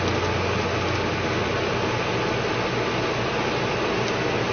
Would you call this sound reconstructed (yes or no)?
no